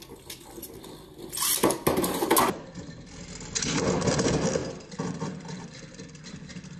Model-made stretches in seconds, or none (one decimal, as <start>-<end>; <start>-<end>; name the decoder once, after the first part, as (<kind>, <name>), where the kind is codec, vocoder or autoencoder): none